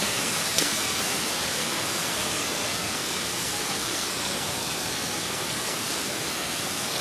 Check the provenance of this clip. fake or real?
fake